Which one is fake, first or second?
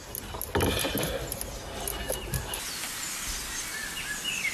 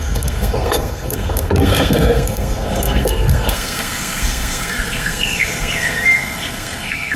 second